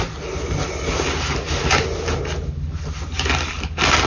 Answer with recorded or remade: recorded